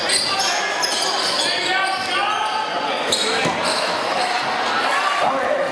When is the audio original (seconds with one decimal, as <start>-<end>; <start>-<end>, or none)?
0.0-3.7; 4.4-5.7